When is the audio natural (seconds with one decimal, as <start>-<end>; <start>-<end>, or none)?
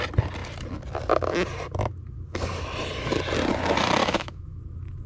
0.0-4.0; 4.6-5.1